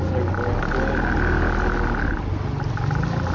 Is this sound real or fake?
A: real